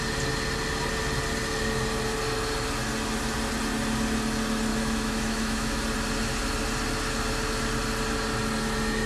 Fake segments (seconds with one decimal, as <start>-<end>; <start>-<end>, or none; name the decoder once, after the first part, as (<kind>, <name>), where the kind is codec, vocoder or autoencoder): 4.7-5.8 (autoencoder, DAC-VAE)